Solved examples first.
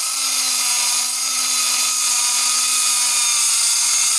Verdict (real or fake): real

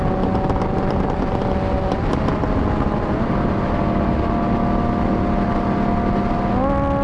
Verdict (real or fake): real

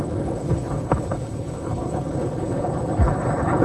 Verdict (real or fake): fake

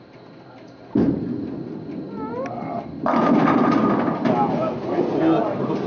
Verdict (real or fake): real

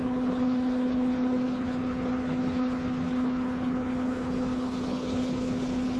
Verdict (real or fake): fake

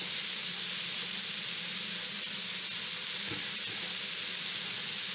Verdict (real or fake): real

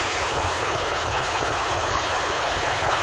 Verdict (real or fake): fake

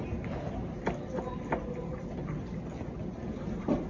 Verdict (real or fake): real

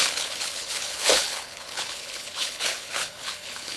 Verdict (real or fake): fake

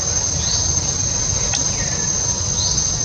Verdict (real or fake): real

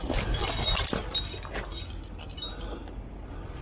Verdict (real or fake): real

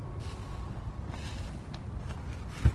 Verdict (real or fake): real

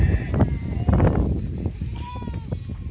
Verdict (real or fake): real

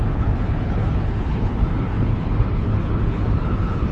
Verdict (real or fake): fake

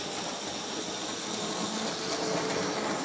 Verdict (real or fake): real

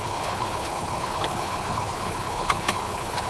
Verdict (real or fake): fake